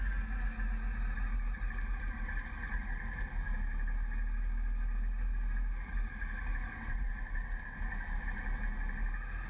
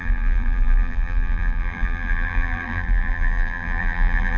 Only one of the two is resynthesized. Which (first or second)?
second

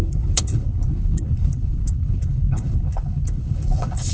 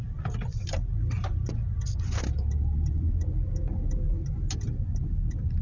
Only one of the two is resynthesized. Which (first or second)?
first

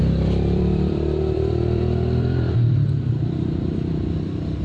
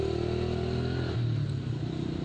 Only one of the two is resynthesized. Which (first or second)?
first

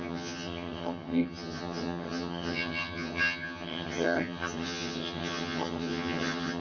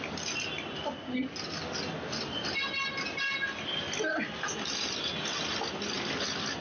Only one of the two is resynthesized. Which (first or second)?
first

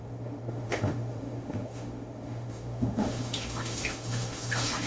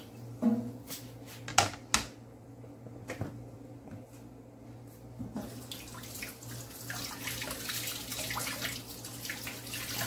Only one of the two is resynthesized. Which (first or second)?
first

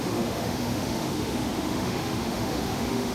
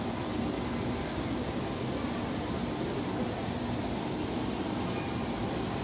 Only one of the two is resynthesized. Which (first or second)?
first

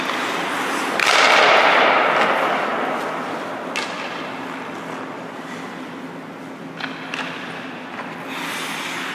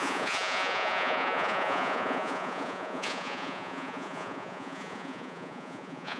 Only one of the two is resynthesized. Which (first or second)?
second